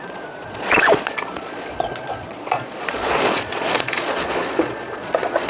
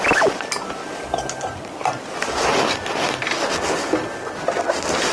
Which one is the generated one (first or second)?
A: first